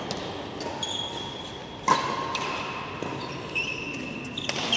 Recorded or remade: recorded